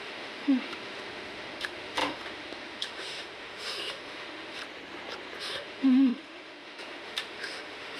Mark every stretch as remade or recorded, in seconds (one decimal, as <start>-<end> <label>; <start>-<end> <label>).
0.0-4.6 remade; 4.6-5.4 recorded; 5.4-8.0 remade

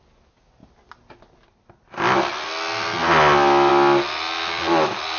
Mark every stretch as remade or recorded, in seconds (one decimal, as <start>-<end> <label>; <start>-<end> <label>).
0.0-5.2 recorded